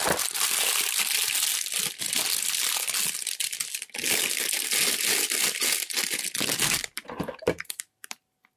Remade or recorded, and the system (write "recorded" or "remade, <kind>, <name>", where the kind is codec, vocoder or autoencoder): recorded